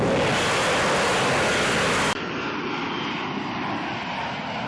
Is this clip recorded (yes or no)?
yes